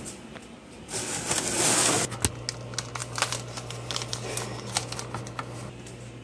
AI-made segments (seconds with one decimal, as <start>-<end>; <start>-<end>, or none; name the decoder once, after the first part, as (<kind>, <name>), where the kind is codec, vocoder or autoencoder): none